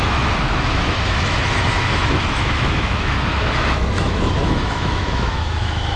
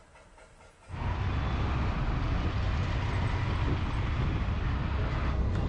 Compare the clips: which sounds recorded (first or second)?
second